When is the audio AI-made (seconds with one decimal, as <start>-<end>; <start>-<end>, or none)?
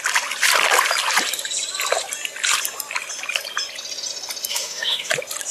4.5-5.1